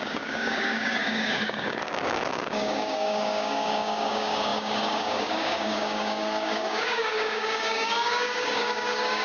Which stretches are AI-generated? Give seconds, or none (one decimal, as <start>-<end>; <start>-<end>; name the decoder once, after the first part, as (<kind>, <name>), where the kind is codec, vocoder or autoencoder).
0.0-9.2 (codec, DAC)